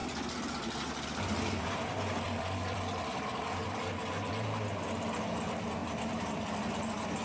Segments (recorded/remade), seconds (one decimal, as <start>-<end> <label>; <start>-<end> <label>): 0.0-4.3 remade; 4.3-5.8 recorded; 5.8-6.7 remade; 6.7-7.2 recorded